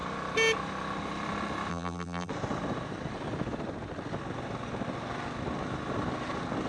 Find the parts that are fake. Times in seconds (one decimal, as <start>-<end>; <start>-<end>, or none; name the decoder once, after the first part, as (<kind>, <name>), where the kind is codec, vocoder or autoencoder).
1.7-2.3 (vocoder, BigVGAN v2)